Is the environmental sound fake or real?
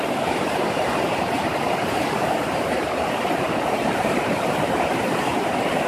fake